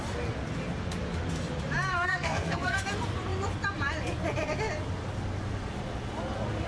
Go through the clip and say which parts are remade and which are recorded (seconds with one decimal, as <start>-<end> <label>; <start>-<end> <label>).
0.0-1.9 recorded; 1.9-2.8 remade; 2.8-6.7 recorded